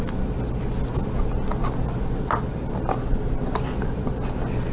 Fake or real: real